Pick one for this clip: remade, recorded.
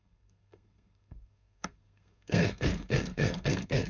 remade